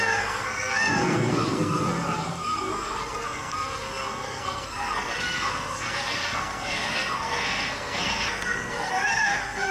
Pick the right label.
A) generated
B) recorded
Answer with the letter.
A